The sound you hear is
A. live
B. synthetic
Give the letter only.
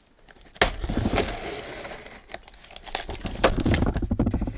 A